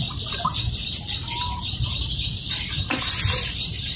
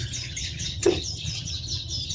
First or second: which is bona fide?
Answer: first